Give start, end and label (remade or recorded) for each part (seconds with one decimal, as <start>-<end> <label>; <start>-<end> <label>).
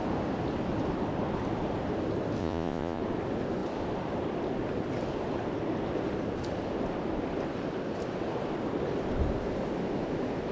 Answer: 0.0-2.4 recorded; 2.4-3.0 remade; 3.0-10.5 recorded